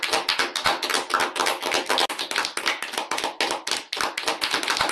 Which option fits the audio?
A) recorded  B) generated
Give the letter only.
A